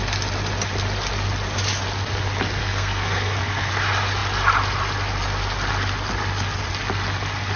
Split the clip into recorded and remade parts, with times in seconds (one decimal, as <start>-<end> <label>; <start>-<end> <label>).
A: 0.0-2.6 recorded; 2.6-3.7 remade; 3.7-7.6 recorded